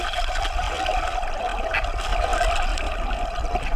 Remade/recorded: recorded